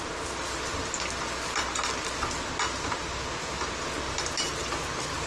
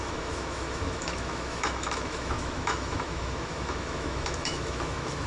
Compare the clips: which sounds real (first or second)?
first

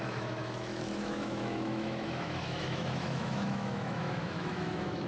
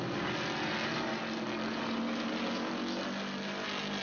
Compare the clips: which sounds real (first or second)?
second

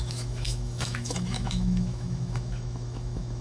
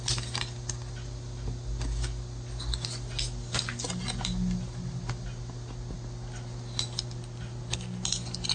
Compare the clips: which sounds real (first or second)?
second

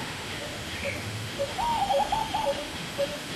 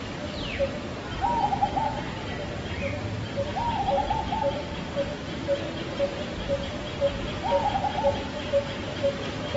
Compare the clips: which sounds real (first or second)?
second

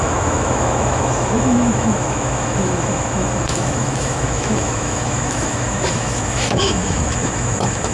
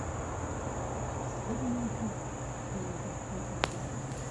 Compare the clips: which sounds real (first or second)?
second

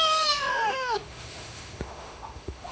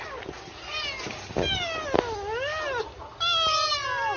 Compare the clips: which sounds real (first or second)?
second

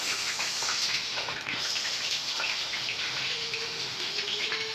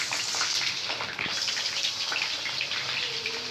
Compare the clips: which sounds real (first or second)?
second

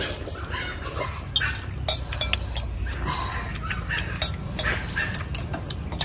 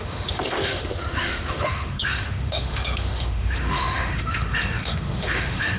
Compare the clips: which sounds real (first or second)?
first